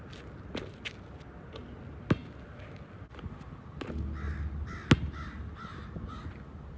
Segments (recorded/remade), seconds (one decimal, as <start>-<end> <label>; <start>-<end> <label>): 0.0-6.8 recorded